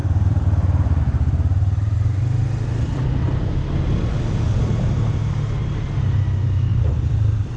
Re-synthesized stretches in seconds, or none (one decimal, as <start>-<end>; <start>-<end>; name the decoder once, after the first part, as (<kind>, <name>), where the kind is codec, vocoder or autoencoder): 0.0-1.0 (vocoder, BigVGAN v2); 2.9-4.1; 6.7-7.6